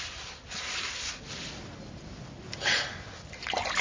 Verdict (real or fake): real